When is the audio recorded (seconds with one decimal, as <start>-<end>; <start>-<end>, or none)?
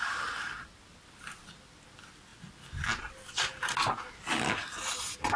0.0-5.4